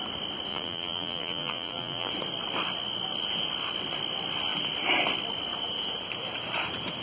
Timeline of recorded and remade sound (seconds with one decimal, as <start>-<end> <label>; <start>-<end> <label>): 0.0-0.5 recorded; 0.5-2.1 remade; 2.1-7.0 recorded